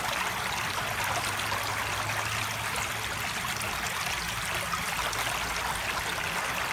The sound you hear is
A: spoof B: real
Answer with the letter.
B